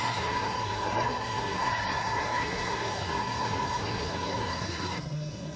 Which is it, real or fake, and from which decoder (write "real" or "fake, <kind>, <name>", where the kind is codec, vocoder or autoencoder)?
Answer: fake, codec, SNAC